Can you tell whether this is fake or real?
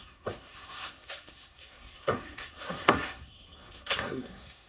fake